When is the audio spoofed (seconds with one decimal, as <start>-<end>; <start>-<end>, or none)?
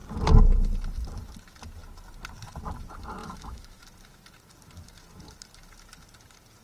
3.2-3.8